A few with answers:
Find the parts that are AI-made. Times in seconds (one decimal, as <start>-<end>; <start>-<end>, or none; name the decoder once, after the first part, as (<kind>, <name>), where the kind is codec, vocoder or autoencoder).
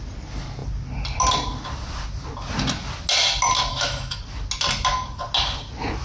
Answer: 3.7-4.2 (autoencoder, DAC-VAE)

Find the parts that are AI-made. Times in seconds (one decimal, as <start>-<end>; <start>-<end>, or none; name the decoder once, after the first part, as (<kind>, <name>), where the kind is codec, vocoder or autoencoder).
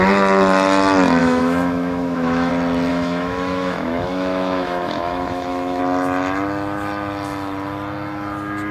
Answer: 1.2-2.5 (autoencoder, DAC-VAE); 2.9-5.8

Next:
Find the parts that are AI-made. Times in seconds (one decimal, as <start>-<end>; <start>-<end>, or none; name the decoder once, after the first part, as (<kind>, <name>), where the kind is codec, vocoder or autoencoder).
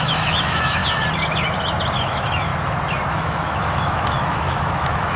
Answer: 0.0-0.8 (autoencoder, DAC-VAE); 2.0-2.5; 3.1-5.2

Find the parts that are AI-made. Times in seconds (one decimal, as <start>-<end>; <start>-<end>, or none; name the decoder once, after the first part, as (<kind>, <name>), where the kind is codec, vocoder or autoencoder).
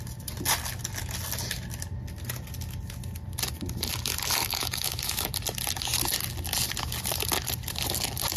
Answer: 4.4-5.3 (autoencoder, DAC-VAE)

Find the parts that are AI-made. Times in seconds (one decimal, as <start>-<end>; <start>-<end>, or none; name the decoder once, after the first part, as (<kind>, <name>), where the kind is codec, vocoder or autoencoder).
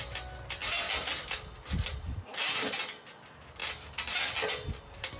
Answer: none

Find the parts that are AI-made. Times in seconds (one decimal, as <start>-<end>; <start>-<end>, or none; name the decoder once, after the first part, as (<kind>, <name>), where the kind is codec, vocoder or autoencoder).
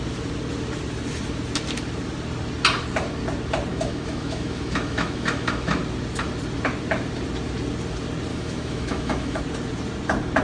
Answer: 3.7-5.8 (autoencoder, DAC-VAE); 8.3-9.4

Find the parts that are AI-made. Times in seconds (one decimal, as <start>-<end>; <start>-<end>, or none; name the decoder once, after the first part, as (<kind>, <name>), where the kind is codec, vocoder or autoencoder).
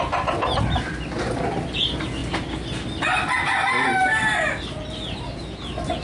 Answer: none